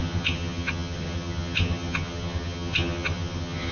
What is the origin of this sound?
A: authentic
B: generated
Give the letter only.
B